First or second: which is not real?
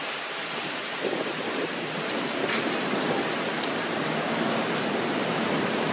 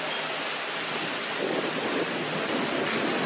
first